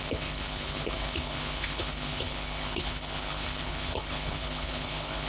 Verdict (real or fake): fake